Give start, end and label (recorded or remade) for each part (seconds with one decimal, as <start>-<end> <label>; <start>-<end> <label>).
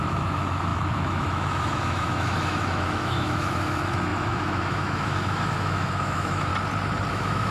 0.0-6.5 remade; 6.5-7.1 recorded; 7.1-7.5 remade